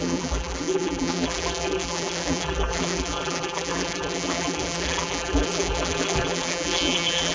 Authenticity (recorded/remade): remade